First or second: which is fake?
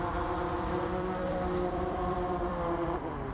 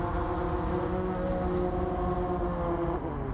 first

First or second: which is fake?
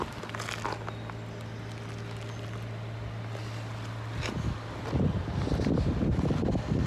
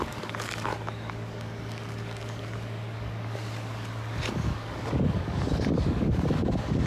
second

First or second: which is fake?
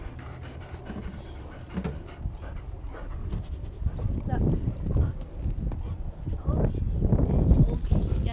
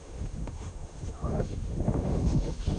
second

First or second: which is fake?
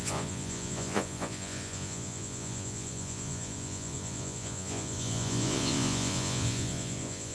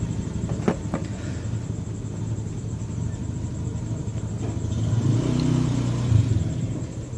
first